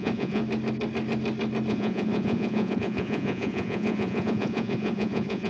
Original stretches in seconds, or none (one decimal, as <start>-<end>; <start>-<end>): 0.4-1.7

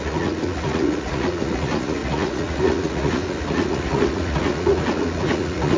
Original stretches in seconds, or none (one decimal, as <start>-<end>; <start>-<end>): none

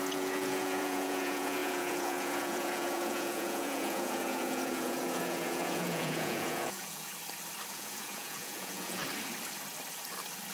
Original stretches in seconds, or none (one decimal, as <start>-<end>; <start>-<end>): 7.1-7.7; 9.0-10.5

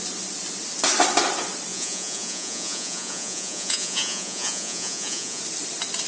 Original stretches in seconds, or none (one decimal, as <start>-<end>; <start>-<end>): 0.0-1.7; 5.4-6.1

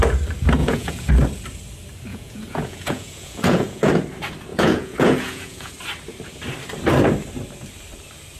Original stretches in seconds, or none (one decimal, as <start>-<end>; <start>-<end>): 0.0-0.6; 1.1-2.1; 3.9-4.5; 5.7-8.4

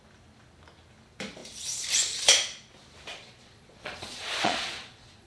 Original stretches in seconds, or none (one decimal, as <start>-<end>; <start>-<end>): 0.0-3.1